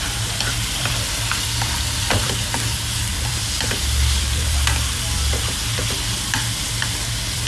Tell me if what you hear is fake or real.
fake